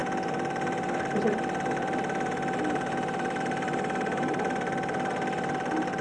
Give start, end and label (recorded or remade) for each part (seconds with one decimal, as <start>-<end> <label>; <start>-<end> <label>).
0.0-6.0 recorded